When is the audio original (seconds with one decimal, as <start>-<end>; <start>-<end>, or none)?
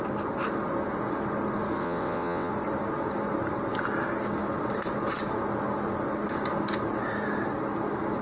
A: 0.0-1.8; 2.5-8.2